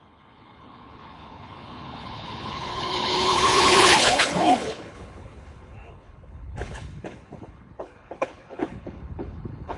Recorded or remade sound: remade